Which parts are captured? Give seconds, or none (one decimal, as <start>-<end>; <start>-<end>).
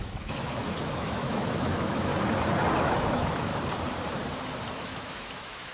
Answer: 2.1-2.8; 3.5-4.7